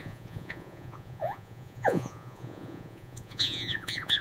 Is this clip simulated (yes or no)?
yes